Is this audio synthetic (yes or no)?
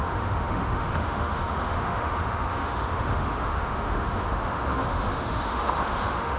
yes